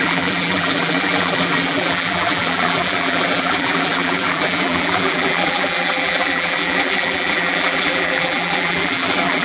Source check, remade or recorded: remade